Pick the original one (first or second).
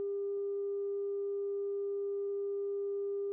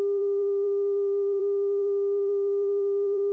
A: first